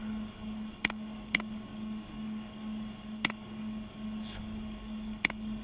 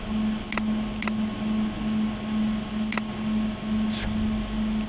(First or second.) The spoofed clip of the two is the first